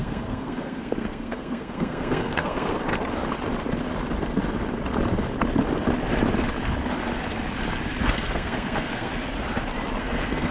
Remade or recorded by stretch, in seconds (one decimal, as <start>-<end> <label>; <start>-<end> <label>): 0.0-2.9 remade; 2.9-8.0 recorded; 8.0-9.1 remade; 9.1-10.0 recorded; 10.0-10.5 remade

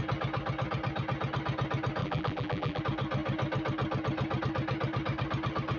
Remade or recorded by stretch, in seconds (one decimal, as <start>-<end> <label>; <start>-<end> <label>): 0.0-2.0 recorded; 2.0-2.8 remade; 2.8-5.8 recorded